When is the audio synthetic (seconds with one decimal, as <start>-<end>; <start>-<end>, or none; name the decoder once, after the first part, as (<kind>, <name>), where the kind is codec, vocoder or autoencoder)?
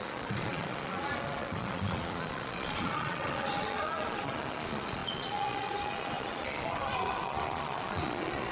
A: 0.0-8.5 (vocoder, Vocos)